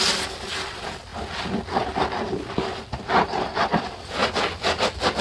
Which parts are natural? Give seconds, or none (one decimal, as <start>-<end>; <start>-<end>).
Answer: 1.1-3.2; 4.2-5.2